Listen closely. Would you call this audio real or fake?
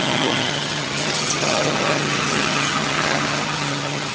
fake